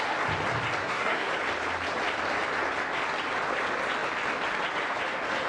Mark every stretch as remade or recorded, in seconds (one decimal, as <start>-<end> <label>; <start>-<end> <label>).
0.0-0.8 recorded; 0.8-1.3 remade; 1.3-5.5 recorded